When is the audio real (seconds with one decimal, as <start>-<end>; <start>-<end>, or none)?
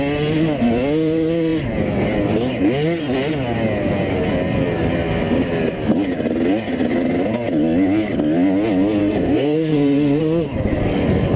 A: 0.0-9.0; 10.2-11.4